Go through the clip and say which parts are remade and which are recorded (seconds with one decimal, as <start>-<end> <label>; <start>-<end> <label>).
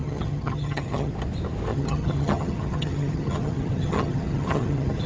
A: 0.0-1.1 remade; 1.1-1.7 recorded; 1.7-5.1 remade